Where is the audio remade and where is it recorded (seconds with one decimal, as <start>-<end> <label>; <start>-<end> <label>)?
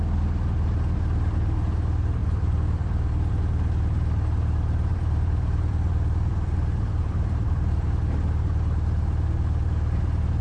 0.0-2.2 recorded; 2.2-3.3 remade; 3.3-4.9 recorded; 4.9-8.0 remade; 8.0-10.4 recorded